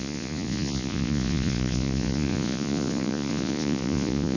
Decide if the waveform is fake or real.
fake